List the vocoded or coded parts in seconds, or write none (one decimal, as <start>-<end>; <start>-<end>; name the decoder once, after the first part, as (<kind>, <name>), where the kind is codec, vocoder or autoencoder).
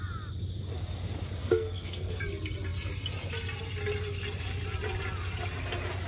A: 1.4-2.2 (codec, SNAC)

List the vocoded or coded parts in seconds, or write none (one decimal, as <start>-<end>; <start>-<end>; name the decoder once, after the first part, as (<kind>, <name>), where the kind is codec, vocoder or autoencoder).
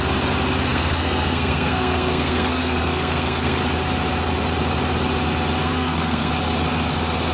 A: 0.7-3.6 (codec, SNAC); 5.6-6.3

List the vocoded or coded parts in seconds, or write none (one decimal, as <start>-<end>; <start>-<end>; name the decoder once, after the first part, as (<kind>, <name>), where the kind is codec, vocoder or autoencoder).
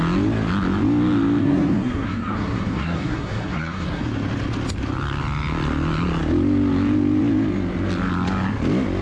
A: 1.4-4.0 (codec, SNAC)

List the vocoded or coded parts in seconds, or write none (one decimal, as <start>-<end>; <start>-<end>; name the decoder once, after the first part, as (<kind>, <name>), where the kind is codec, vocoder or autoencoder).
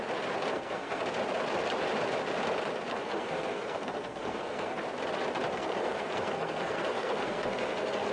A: 0.5-1.0 (codec, SNAC); 2.9-4.8; 5.5-8.1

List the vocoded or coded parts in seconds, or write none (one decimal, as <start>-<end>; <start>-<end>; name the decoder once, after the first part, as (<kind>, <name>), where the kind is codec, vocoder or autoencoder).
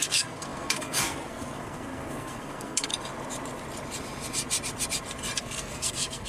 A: 0.0-2.9 (codec, SNAC); 5.4-6.3